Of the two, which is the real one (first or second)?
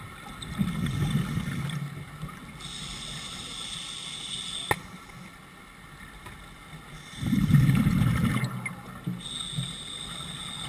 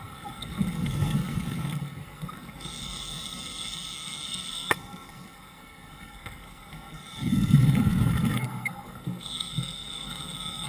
first